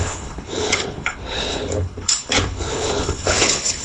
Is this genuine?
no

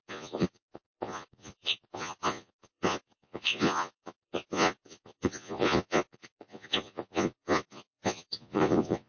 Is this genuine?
no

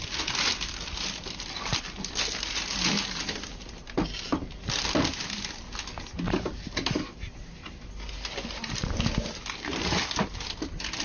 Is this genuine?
yes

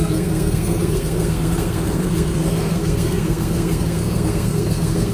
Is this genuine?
no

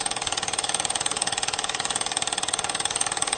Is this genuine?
no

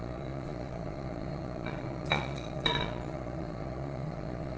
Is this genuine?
no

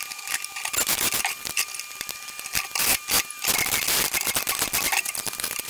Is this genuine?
yes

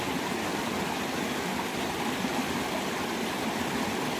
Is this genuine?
yes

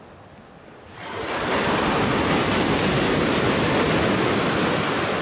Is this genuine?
yes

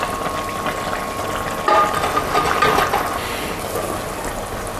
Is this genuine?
yes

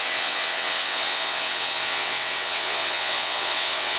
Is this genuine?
no